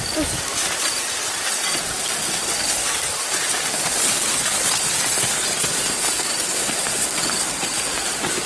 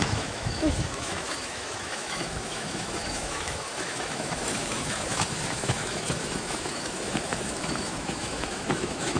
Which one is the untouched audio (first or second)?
first